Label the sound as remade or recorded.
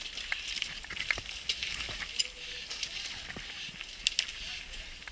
recorded